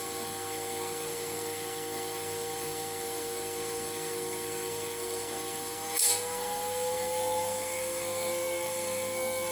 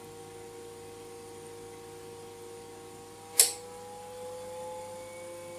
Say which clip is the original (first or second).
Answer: second